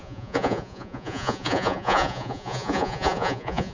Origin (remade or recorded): remade